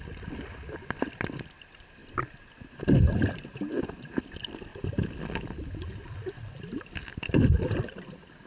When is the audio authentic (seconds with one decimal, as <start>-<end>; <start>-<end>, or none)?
2.0-3.8; 4.7-5.4